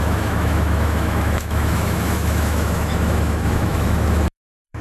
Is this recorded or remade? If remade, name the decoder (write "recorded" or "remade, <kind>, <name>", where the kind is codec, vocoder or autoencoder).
remade, autoencoder, DAC-VAE